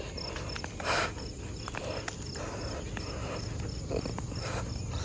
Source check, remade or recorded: recorded